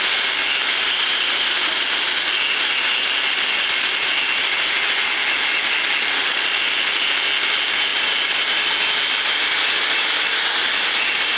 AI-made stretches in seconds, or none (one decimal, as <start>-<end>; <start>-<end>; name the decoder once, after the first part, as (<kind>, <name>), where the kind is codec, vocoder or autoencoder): none